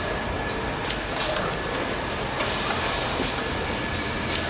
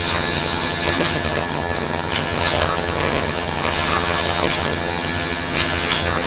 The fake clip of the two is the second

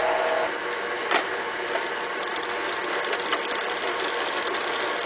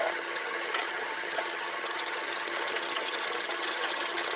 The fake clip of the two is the second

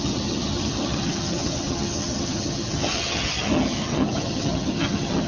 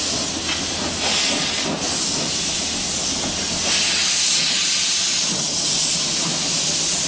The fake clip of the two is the first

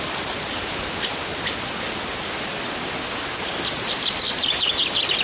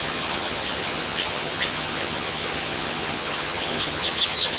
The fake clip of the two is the second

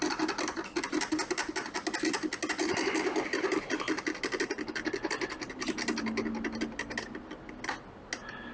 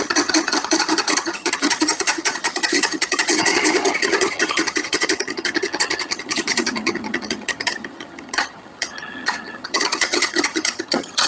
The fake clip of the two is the second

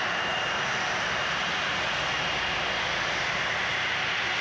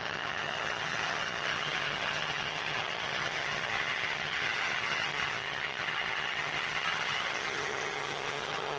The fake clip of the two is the second